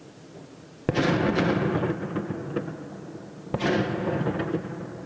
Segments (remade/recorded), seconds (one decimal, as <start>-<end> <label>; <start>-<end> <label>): 0.0-5.1 recorded